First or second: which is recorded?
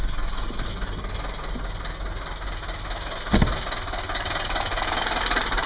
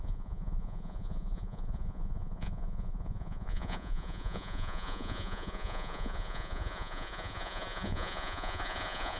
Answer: first